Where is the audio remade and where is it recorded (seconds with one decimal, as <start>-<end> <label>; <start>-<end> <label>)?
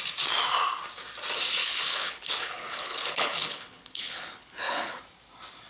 0.0-1.6 recorded; 1.6-5.0 remade; 5.0-5.7 recorded